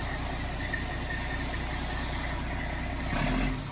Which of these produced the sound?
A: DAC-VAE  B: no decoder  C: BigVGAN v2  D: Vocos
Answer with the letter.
B